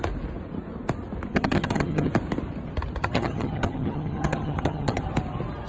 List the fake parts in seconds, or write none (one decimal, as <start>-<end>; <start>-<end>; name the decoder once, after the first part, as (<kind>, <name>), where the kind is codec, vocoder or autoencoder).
1.3-2.1 (vocoder, HiFi-GAN); 3.0-5.0